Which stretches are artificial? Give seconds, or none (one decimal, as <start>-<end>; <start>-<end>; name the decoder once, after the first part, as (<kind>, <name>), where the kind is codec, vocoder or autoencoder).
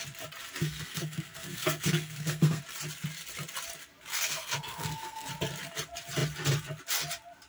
0.6-2.6 (codec, SNAC); 4.1-5.3